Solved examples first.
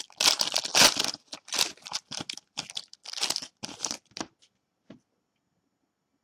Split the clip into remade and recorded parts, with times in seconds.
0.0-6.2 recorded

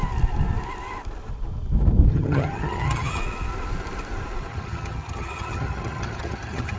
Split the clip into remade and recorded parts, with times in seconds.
0.0-2.1 recorded; 2.1-3.2 remade; 3.2-4.5 recorded; 4.5-6.8 remade

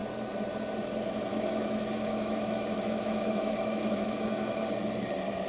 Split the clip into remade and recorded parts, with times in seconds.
0.0-1.3 recorded; 1.3-4.6 remade; 4.6-5.5 recorded

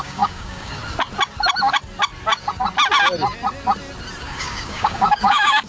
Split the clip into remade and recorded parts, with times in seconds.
0.0-0.8 remade; 0.8-4.2 recorded; 4.2-5.7 remade

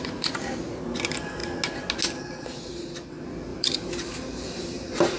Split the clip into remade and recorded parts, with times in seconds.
0.0-3.5 recorded; 3.5-5.2 remade

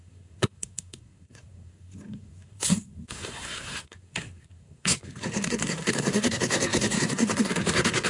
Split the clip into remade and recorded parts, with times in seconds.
0.0-8.1 remade